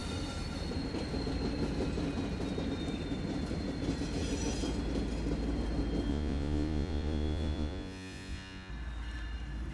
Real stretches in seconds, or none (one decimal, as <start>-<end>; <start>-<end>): 0.0-6.1; 8.7-9.7